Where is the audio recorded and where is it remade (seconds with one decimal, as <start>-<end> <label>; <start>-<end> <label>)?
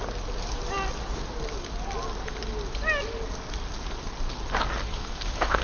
0.0-4.9 recorded; 4.9-5.6 remade